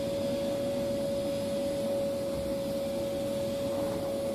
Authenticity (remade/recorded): recorded